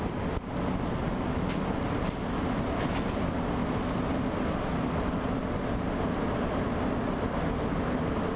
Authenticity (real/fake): real